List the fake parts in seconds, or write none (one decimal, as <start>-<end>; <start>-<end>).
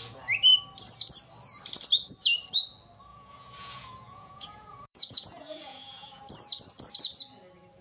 3.1-6.2